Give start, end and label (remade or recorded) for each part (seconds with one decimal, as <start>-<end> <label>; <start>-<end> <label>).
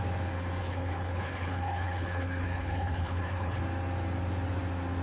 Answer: 0.0-0.6 recorded; 0.6-3.6 remade; 3.6-5.0 recorded